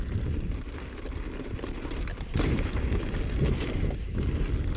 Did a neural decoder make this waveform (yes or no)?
no